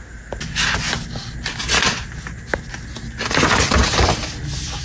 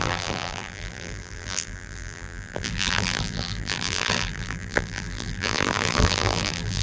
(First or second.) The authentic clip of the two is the first